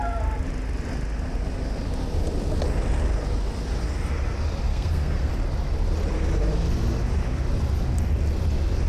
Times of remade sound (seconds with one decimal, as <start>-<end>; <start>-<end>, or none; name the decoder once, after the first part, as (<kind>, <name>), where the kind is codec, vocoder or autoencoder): 4.7-5.3 (codec, SNAC)